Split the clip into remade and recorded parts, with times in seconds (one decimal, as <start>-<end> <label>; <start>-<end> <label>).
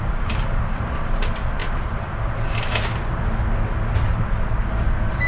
0.0-1.6 remade; 1.6-4.7 recorded; 4.7-5.3 remade